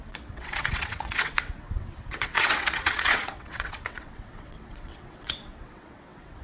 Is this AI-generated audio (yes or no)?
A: yes